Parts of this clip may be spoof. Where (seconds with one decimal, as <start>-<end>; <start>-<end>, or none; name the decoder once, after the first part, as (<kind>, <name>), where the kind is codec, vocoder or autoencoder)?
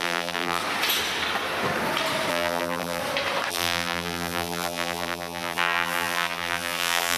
0.0-0.6 (vocoder, BigVGAN v2); 2.3-3.0; 3.5-7.2